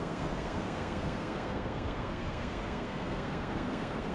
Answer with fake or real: fake